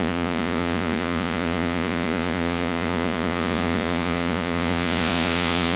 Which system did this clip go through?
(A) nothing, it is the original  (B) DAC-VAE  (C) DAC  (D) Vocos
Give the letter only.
D